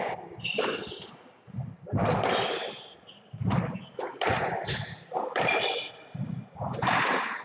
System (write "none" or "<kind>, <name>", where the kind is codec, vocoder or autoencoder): none